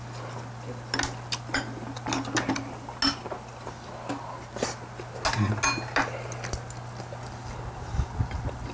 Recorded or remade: recorded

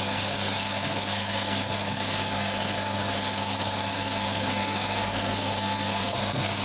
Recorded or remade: remade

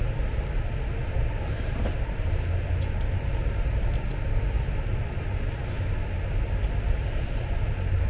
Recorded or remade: recorded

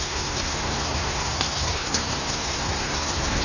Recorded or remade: remade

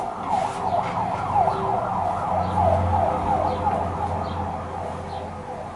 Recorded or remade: recorded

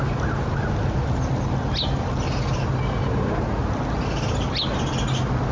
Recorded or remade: recorded